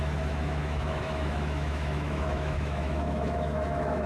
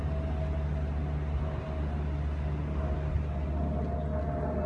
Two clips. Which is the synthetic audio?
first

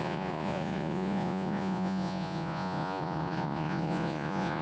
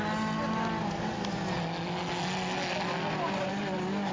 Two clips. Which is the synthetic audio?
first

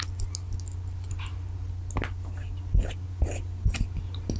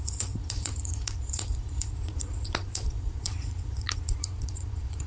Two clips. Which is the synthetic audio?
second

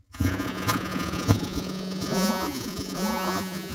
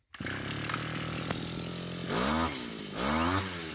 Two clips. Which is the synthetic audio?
first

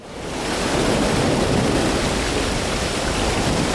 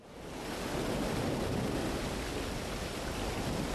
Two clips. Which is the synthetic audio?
first